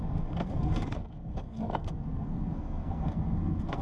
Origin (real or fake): fake